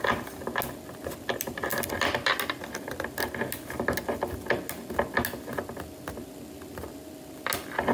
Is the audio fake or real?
real